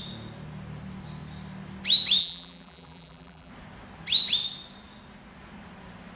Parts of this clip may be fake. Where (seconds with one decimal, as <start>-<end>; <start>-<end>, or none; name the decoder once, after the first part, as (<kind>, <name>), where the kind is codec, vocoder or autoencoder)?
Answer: 2.2-3.5 (vocoder, BigVGAN v2)